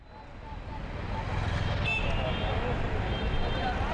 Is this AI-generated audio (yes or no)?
no